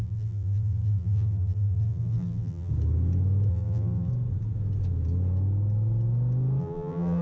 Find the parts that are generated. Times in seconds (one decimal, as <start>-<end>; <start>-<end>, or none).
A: 0.0-2.7; 3.5-4.1; 6.6-7.2

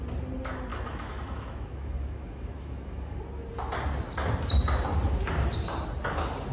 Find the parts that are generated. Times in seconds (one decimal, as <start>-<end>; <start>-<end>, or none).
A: 0.7-3.2

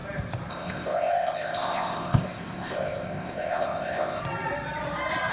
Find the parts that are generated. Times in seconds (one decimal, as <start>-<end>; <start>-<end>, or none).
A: 0.5-4.2

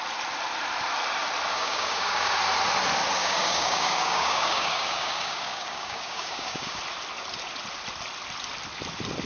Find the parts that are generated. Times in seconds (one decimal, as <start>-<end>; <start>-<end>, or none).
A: 1.5-2.4; 3.2-6.8

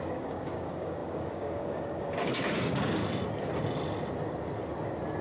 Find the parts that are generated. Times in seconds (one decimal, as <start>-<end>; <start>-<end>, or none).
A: 0.0-3.0